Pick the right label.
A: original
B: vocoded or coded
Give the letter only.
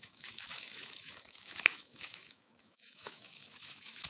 B